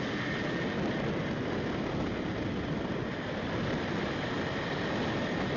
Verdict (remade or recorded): recorded